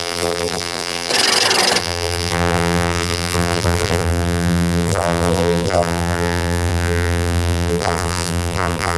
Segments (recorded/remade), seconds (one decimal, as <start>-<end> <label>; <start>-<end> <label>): 0.0-1.1 remade; 1.1-1.8 recorded; 1.8-9.0 remade